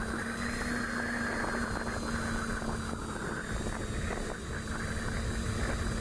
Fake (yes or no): no